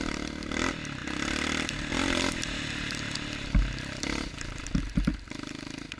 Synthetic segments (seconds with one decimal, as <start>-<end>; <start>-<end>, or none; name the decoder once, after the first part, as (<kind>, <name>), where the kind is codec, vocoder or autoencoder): none